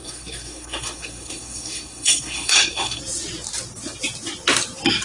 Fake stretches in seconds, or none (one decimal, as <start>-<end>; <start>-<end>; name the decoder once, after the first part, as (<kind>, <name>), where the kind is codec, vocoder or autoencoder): 0.0-3.0 (codec, SNAC)